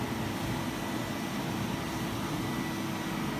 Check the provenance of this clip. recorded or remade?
recorded